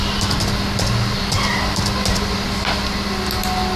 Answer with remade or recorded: recorded